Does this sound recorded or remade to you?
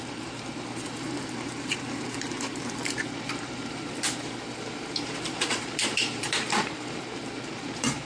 remade